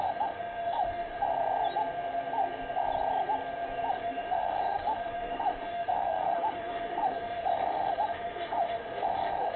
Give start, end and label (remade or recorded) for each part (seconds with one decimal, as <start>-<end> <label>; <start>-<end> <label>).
0.0-1.3 remade; 1.3-3.9 recorded; 3.9-9.6 remade